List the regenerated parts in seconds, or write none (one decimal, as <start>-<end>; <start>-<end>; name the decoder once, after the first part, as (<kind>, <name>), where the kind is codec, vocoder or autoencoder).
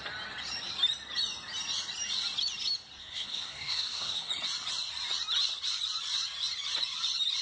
3.0-4.3 (codec, SNAC)